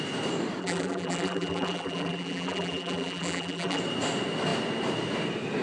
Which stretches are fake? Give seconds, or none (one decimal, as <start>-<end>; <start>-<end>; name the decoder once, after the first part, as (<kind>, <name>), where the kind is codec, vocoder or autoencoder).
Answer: 0.6-3.8 (vocoder, BigVGAN v2)